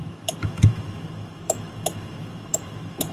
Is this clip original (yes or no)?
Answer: no